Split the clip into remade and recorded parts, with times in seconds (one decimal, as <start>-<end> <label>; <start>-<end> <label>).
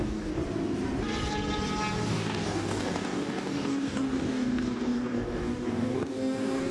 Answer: 0.0-0.4 remade; 0.4-2.1 recorded; 2.1-6.7 remade